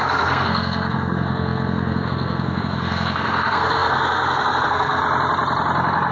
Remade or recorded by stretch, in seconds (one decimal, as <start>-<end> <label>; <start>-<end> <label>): 0.0-5.0 remade; 5.0-6.1 recorded

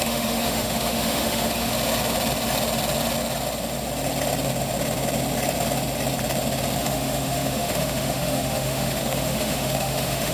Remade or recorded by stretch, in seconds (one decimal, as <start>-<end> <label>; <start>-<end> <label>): 0.0-1.7 remade; 1.7-6.8 recorded; 6.8-10.3 remade

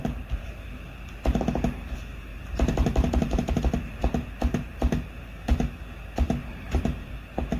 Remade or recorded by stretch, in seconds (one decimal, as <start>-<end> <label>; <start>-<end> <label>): 0.0-2.3 recorded; 2.3-3.6 remade; 3.6-6.4 recorded; 6.4-7.1 remade; 7.1-7.6 recorded

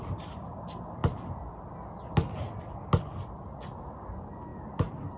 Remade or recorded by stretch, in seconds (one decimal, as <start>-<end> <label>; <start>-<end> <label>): 0.0-5.2 recorded

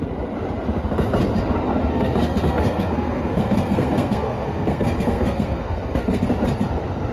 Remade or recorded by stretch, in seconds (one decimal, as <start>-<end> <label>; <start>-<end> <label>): 0.0-1.9 recorded; 1.9-6.2 remade; 6.2-7.1 recorded

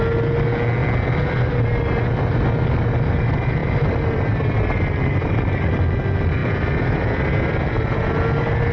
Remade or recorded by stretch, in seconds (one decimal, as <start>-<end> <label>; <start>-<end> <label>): 0.0-3.6 recorded; 3.6-5.6 remade; 5.6-6.4 recorded; 6.4-7.7 remade; 7.7-8.7 recorded

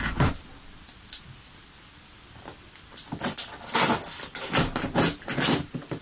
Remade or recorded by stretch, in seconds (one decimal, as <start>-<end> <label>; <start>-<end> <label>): 0.0-6.0 recorded